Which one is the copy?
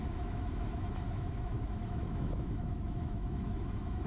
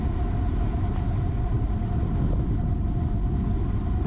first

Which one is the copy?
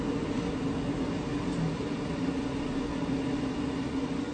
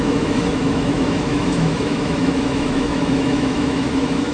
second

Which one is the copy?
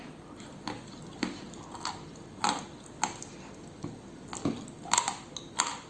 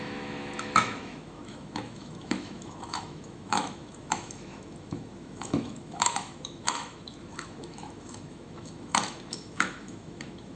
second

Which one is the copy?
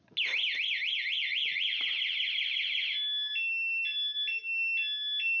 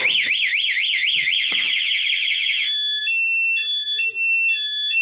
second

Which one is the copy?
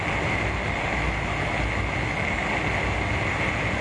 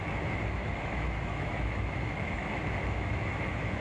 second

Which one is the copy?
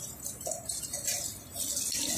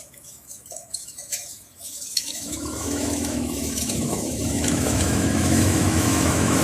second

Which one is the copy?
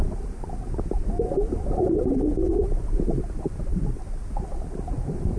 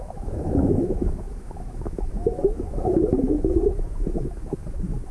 second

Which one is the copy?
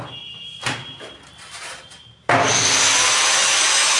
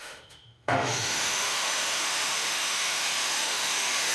second